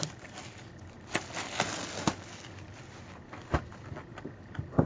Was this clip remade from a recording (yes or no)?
no